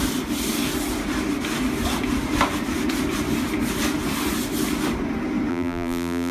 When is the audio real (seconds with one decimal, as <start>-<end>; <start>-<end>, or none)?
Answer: 0.0-5.5